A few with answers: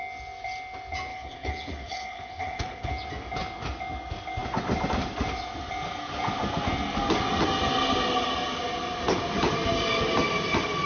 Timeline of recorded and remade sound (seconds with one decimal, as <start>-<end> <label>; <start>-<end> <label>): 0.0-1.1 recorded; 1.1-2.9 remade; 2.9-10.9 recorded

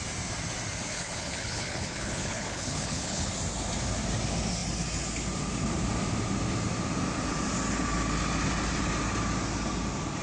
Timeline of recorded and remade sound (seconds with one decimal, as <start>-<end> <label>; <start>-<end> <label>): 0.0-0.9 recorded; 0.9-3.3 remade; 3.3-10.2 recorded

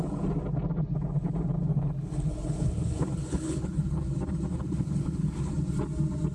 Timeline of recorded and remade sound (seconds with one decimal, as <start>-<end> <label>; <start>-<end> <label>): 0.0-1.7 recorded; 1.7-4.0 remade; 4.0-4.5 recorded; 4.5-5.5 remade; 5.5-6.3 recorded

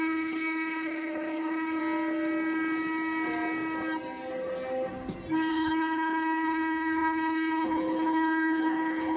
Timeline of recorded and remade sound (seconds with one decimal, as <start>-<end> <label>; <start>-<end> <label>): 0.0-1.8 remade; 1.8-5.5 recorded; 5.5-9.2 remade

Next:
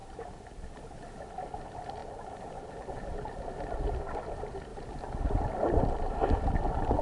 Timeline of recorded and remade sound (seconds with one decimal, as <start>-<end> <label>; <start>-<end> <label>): 0.0-7.0 recorded

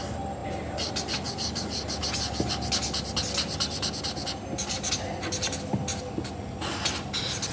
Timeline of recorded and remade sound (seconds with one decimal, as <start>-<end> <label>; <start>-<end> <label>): 0.0-7.5 recorded